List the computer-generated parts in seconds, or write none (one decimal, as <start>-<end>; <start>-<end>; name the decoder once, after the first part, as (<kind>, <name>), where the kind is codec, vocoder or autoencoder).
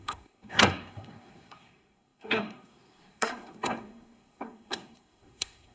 0.0-5.7 (codec, SNAC)